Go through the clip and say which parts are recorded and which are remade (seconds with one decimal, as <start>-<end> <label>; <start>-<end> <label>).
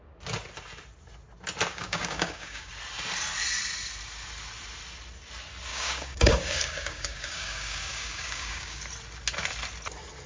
0.0-1.7 recorded; 1.7-2.7 remade; 2.7-5.7 recorded; 5.7-8.8 remade; 8.8-10.3 recorded